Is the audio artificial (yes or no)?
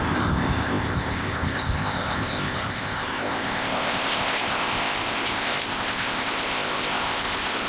yes